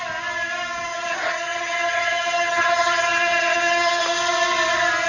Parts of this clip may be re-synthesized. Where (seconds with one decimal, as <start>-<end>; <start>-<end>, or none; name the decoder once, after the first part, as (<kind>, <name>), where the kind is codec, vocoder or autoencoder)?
0.9-4.0 (vocoder, HiFi-GAN)